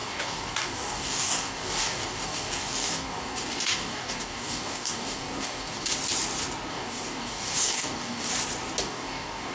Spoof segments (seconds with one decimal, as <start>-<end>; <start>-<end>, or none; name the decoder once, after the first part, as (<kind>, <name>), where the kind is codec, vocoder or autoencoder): 0.0-5.9 (codec, DAC); 6.7-8.3; 8.8-9.5